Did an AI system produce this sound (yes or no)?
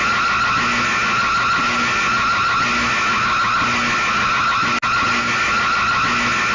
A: no